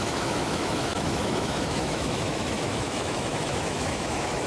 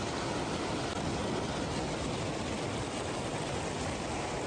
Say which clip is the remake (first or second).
first